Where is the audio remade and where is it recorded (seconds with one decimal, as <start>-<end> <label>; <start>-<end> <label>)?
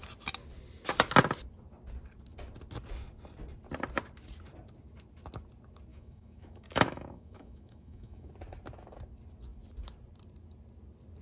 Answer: 0.0-5.9 recorded; 5.9-8.3 remade; 8.3-11.2 recorded